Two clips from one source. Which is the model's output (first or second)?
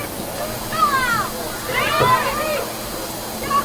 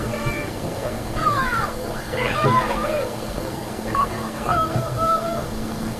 second